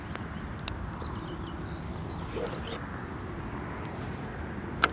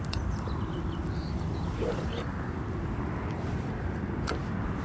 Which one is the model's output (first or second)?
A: second